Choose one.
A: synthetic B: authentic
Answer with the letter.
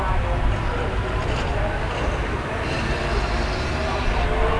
B